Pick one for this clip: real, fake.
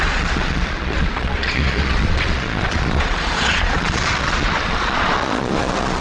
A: fake